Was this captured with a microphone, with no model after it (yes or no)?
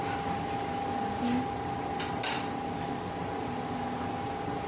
yes